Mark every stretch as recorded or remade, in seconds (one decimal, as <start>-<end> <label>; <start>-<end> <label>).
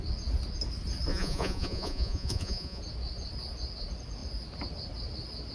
0.0-1.1 recorded; 1.1-2.8 remade; 2.8-5.5 recorded